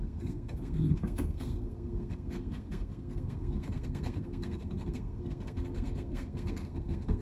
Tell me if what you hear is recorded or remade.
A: remade